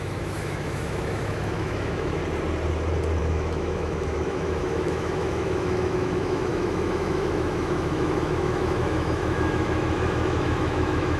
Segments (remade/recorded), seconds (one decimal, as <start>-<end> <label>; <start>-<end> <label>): 0.0-2.2 remade; 2.2-3.2 recorded; 3.2-11.2 remade

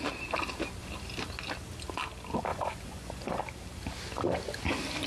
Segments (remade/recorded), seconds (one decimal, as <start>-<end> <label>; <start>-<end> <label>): 0.0-2.5 recorded; 2.5-3.4 remade; 3.4-5.1 recorded

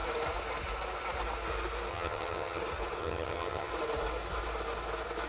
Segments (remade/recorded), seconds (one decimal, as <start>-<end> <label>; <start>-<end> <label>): 0.0-1.9 recorded; 1.9-2.6 remade; 2.6-3.0 recorded; 3.0-3.7 remade; 3.7-5.3 recorded